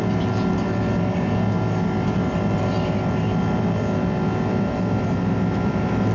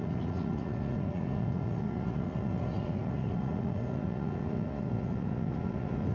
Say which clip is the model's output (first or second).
second